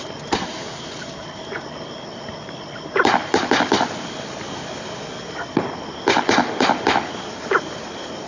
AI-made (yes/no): no